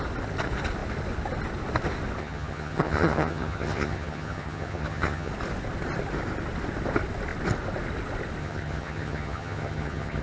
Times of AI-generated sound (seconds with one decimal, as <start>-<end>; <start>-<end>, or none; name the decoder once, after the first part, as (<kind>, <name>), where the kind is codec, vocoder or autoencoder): 2.2-5.3 (vocoder, HiFi-GAN); 8.4-10.2